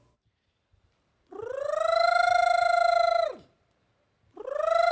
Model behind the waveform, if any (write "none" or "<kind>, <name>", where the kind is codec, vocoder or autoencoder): vocoder, BigVGAN v2